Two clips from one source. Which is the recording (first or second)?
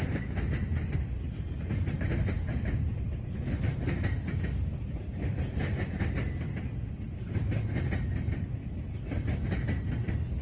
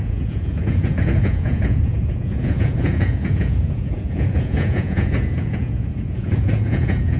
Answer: first